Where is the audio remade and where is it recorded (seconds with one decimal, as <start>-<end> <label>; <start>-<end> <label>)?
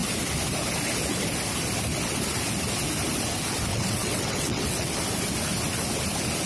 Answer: 0.0-3.7 recorded; 3.7-4.9 remade; 4.9-6.5 recorded